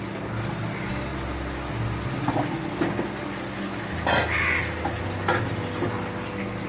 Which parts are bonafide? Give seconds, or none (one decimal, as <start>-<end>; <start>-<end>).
0.0-6.7